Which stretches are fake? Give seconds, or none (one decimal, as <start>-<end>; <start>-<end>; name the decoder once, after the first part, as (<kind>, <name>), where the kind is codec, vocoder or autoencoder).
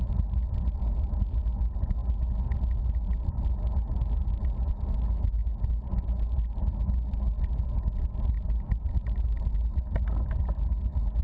none